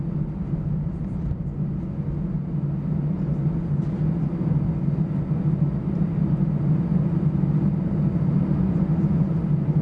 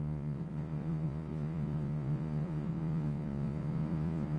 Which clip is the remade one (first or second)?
second